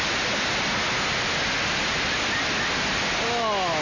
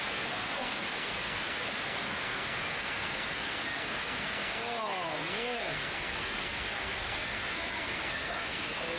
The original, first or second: first